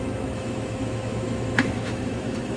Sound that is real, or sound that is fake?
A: fake